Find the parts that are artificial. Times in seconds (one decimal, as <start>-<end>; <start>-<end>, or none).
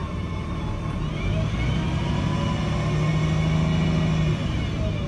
none